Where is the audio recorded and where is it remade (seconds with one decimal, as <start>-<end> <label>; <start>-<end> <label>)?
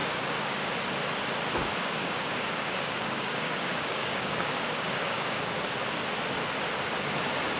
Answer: 0.0-0.7 remade; 0.7-1.7 recorded; 1.7-5.6 remade; 5.6-7.6 recorded